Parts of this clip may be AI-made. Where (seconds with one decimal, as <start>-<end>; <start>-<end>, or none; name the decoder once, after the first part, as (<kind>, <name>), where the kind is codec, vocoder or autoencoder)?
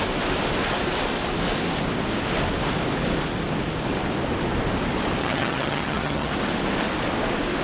5.2-6.3 (vocoder, HiFi-GAN)